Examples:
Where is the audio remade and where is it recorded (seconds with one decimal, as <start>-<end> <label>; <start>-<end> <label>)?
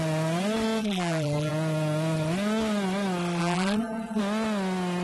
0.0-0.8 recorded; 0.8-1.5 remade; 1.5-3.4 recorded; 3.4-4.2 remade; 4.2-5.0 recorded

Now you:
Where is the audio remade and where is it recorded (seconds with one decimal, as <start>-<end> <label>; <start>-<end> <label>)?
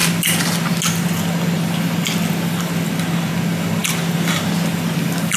0.0-5.4 recorded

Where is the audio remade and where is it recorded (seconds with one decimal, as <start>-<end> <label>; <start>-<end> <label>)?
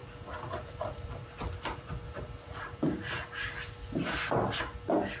0.0-3.1 remade; 3.1-5.2 recorded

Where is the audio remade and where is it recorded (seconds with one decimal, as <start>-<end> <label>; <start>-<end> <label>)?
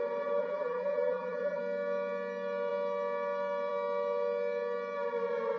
0.0-0.4 recorded; 0.4-1.6 remade; 1.6-5.6 recorded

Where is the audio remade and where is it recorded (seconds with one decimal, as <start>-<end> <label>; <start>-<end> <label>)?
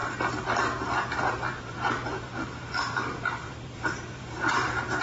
0.0-1.3 recorded; 1.3-5.0 remade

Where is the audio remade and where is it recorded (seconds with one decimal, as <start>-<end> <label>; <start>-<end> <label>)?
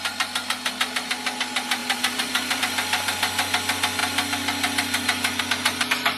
0.0-1.8 recorded; 1.8-2.6 remade; 2.6-6.2 recorded